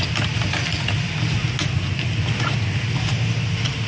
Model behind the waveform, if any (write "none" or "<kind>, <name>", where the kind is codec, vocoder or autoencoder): none